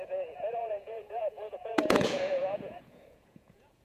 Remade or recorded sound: remade